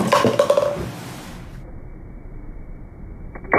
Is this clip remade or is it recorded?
recorded